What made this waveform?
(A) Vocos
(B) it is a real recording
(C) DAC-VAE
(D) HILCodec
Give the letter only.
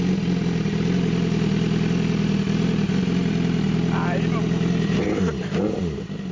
B